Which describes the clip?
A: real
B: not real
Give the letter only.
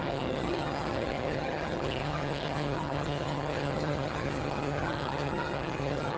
B